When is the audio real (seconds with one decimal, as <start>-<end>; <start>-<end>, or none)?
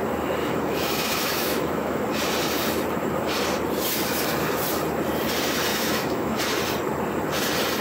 0.0-0.4; 2.0-5.7; 6.4-7.8